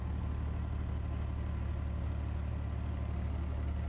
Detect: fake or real real